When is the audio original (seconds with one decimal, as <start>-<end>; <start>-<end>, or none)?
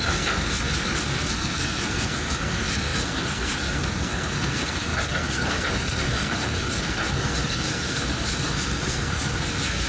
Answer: none